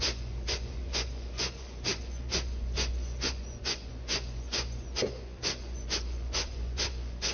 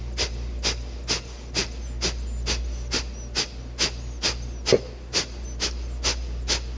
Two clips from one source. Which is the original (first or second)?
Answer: second